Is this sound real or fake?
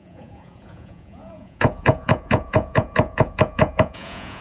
fake